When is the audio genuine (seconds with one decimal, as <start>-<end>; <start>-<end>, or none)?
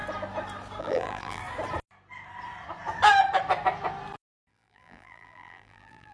0.0-0.8; 1.4-4.5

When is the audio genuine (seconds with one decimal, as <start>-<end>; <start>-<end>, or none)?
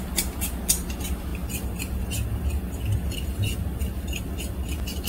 0.0-5.1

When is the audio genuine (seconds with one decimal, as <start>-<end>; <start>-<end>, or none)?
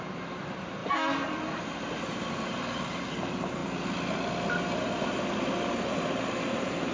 3.6-6.5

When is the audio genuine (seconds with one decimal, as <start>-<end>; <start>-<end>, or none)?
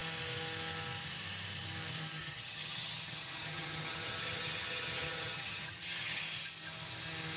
0.0-2.2; 6.2-7.4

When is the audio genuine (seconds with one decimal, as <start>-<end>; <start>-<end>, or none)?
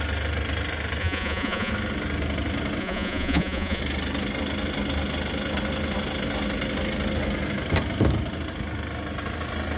0.0-1.0; 1.7-2.8; 3.8-9.8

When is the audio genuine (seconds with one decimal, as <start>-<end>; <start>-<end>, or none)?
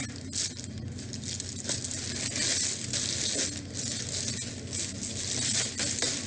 0.0-6.3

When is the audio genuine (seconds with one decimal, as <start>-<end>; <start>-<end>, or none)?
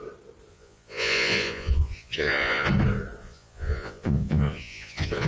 0.0-0.5; 2.7-3.2